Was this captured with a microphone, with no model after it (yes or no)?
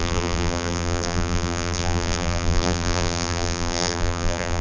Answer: no